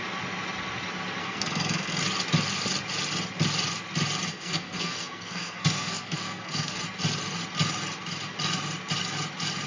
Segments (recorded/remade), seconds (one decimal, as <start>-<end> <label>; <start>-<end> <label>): 0.0-1.2 recorded; 1.2-2.0 remade; 2.0-4.3 recorded; 4.3-6.8 remade; 6.8-9.7 recorded